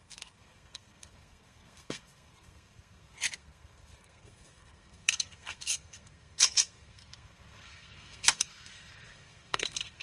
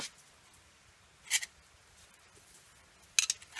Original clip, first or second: second